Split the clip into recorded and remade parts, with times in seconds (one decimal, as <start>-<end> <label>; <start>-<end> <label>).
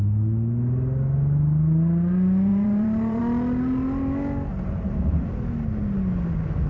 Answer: 0.0-2.5 recorded; 2.5-3.2 remade; 3.2-4.5 recorded; 4.5-5.2 remade; 5.2-6.7 recorded